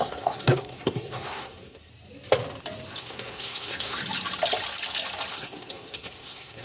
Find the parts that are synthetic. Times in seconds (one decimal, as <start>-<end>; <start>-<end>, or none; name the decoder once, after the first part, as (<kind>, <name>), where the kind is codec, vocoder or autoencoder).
0.0-1.9 (codec, SNAC); 3.0-4.0; 5.3-6.6